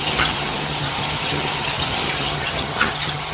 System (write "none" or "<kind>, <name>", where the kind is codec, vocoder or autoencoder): vocoder, HiFi-GAN